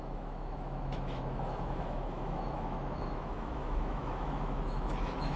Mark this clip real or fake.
fake